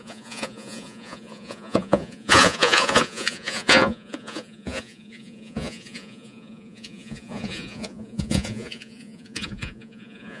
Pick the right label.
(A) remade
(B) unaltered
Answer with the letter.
A